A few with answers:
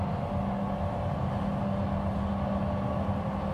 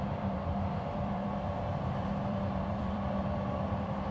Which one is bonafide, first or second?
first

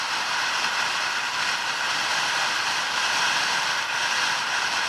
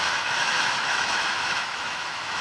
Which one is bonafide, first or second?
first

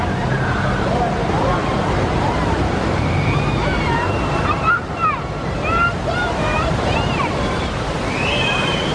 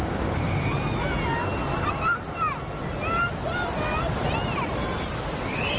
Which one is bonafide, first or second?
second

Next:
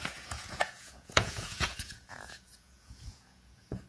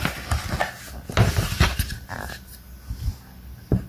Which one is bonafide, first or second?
second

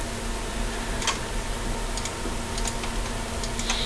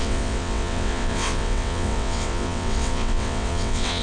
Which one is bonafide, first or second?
first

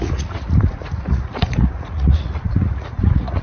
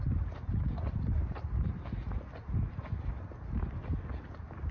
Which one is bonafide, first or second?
second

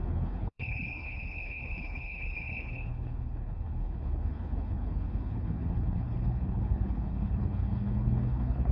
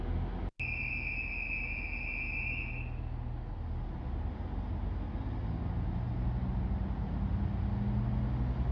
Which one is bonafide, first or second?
second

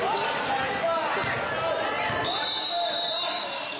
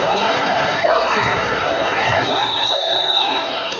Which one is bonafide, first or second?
first